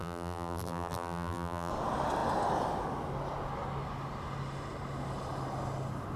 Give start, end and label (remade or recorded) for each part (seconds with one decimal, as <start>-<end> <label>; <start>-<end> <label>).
0.0-1.7 remade; 1.7-6.2 recorded